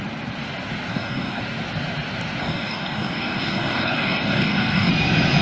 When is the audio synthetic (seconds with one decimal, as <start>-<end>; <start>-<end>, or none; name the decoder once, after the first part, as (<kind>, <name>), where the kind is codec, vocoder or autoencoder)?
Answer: 0.9-1.4 (codec, DAC); 2.4-4.9